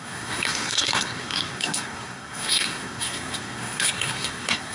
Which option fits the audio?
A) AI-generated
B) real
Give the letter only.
A